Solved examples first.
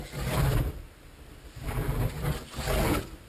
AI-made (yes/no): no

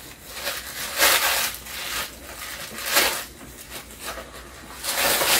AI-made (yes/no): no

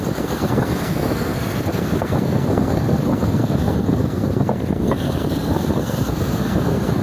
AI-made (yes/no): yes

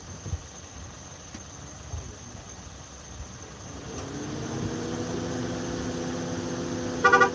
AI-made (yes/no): no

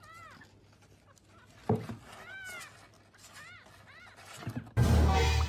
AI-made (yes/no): no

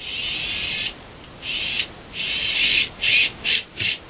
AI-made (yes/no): no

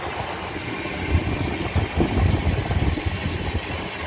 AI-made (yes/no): no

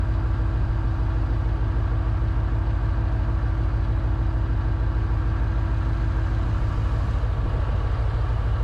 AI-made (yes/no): no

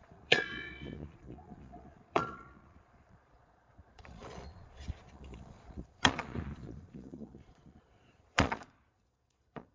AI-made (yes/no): yes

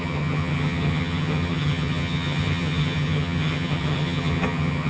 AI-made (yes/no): yes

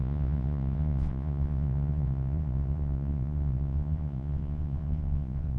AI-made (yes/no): yes